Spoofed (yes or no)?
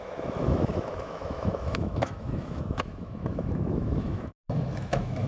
yes